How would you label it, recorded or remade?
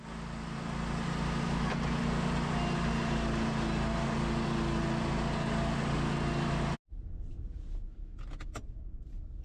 recorded